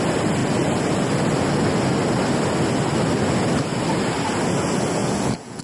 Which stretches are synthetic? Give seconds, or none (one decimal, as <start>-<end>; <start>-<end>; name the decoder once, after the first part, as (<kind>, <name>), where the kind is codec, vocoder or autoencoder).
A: 5.0-5.6 (vocoder, Vocos)